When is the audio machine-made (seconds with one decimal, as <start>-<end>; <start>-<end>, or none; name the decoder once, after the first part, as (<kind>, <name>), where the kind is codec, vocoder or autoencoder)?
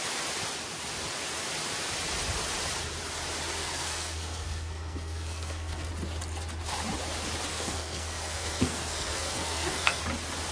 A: 3.6-5.9 (codec, SNAC); 7.5-10.0